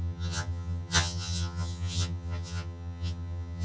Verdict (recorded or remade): remade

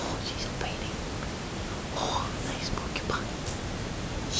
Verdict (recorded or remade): recorded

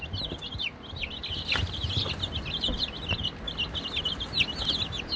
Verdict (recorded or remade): recorded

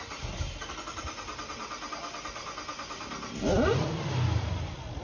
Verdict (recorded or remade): recorded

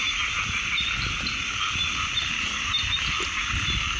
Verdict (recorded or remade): recorded